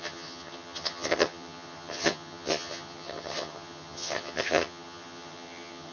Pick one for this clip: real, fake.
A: fake